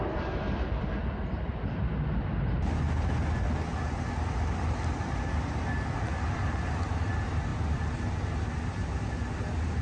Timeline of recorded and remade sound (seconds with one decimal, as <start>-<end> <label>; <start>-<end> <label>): 0.0-9.8 recorded